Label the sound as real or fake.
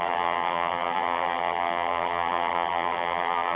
fake